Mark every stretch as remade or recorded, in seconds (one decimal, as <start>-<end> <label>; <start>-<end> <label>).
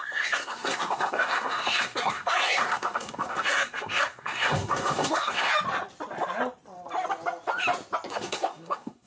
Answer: 0.0-5.5 remade; 5.5-8.1 recorded; 8.1-9.1 remade